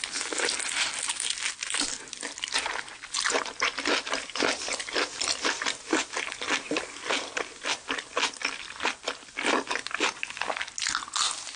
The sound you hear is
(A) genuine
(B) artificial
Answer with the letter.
A